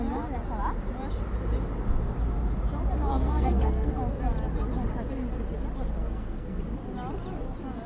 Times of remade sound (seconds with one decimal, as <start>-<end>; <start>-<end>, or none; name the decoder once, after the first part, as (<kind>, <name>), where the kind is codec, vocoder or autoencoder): 3.1-3.9 (codec, SNAC); 6.0-6.6